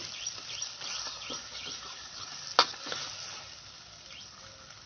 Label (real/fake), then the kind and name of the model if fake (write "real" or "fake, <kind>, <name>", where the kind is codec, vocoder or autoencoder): real